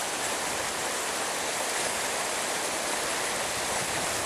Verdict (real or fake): real